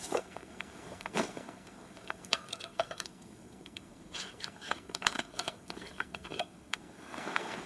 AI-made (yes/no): yes